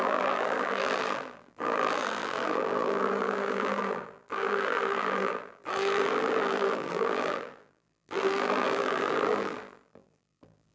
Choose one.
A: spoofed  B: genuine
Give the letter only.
A